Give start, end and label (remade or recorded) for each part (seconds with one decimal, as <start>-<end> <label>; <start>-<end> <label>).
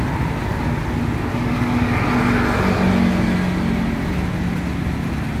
0.0-1.3 recorded; 1.3-2.1 remade; 2.1-5.4 recorded